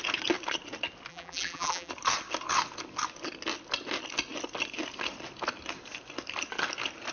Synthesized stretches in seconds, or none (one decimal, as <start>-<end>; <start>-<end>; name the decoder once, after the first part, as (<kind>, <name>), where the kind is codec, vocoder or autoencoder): 1.1-1.9 (vocoder, BigVGAN v2)